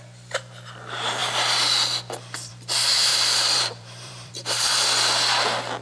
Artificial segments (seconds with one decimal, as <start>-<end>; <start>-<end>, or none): 3.1-4.8